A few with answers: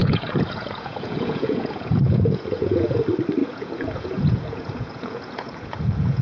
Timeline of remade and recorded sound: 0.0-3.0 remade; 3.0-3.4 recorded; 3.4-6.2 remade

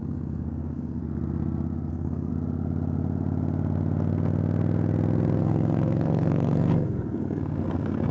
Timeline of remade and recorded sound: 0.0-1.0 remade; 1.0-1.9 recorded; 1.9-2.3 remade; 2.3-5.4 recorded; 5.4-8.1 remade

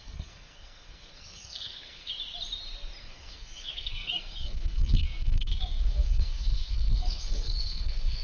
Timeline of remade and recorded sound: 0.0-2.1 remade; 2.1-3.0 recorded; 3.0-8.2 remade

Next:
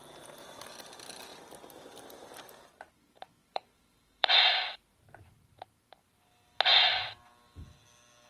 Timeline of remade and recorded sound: 0.0-1.3 recorded; 1.3-2.7 remade; 2.7-3.4 recorded; 3.4-5.6 remade; 5.6-8.3 recorded

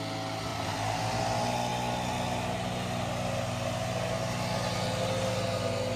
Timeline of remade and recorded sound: 0.0-6.0 recorded

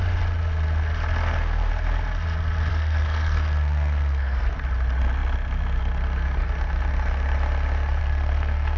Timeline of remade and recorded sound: 0.0-1.2 recorded; 1.2-1.7 remade; 1.7-2.7 recorded; 2.7-4.5 remade; 4.5-8.0 recorded; 8.0-8.8 remade

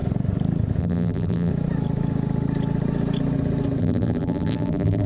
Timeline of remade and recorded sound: 0.0-0.8 recorded; 0.8-1.5 remade; 1.5-3.8 recorded; 3.8-5.1 remade

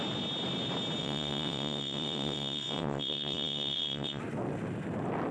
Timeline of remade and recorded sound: 0.0-1.0 recorded; 1.0-4.2 remade; 4.2-5.3 recorded